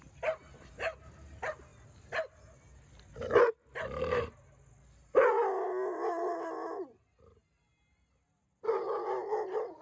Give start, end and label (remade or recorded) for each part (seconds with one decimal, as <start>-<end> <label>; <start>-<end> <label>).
0.0-9.8 recorded